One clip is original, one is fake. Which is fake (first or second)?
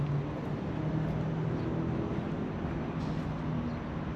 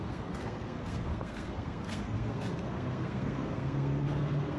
second